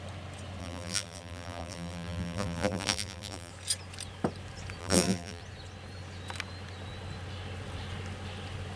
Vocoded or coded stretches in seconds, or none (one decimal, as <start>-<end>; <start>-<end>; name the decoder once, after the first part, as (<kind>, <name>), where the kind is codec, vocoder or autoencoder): 0.6-3.5 (vocoder, BigVGAN v2); 4.8-5.4